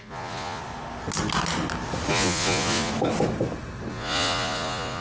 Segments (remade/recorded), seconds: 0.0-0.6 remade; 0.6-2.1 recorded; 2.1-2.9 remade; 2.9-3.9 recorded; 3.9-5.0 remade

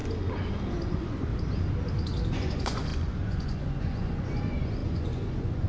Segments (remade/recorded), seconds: 0.0-0.9 recorded; 0.9-1.3 remade; 1.3-2.3 recorded; 2.3-5.7 remade